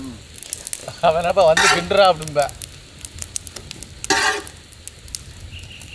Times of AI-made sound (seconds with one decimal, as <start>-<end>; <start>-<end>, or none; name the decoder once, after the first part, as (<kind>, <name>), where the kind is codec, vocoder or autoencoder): none